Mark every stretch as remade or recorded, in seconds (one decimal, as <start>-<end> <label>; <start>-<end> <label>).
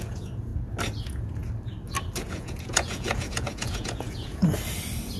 0.0-0.5 remade; 0.5-1.0 recorded; 1.0-1.4 remade; 1.4-2.3 recorded; 2.3-4.4 remade; 4.4-5.2 recorded